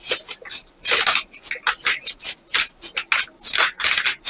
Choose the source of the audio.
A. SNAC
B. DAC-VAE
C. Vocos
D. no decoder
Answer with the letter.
D